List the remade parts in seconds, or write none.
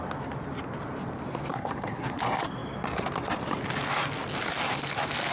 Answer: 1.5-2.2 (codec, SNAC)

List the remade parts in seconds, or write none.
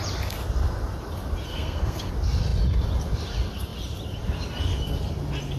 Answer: 1.5-2.1 (codec, SNAC)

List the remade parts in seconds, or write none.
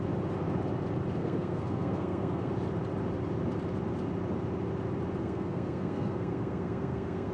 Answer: 1.2-2.5 (codec, SNAC); 5.2-7.3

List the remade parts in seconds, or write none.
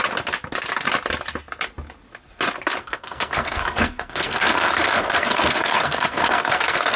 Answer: 2.8-7.0 (codec, SNAC)